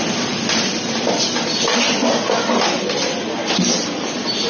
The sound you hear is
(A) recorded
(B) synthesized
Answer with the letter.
A